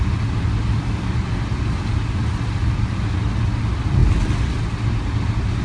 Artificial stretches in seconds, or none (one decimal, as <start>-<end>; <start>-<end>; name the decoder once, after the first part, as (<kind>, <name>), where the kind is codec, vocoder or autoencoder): none